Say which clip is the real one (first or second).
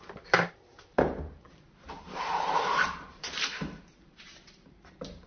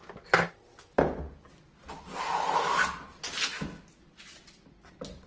second